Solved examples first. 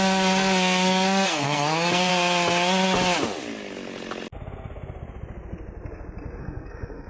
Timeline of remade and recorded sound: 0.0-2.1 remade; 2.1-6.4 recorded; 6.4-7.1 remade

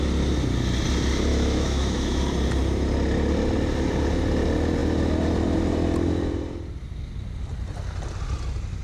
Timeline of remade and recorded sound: 0.0-1.3 recorded; 1.3-2.2 remade; 2.2-8.8 recorded

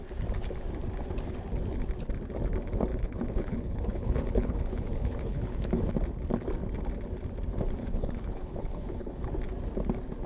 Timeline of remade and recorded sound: 0.0-2.9 recorded; 2.9-5.9 remade; 5.9-7.8 recorded; 7.8-9.2 remade; 9.2-10.3 recorded

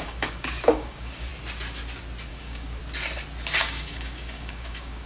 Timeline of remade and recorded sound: 0.0-1.3 remade; 1.3-2.3 recorded; 2.3-2.8 remade; 2.8-3.6 recorded; 3.6-5.1 remade

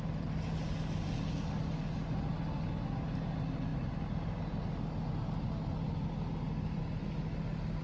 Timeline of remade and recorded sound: 0.0-7.8 recorded